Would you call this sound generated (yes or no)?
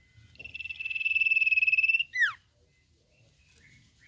no